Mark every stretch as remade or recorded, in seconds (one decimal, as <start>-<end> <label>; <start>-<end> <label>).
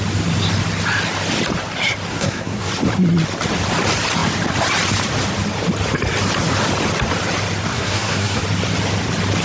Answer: 0.0-2.1 recorded; 2.1-2.7 remade; 2.7-7.7 recorded; 7.7-8.4 remade; 8.4-9.4 recorded